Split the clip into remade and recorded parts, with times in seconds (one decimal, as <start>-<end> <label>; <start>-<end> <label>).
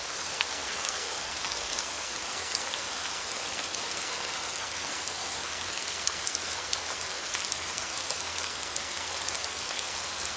0.0-10.4 remade